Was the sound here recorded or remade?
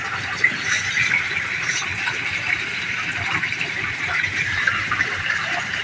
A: remade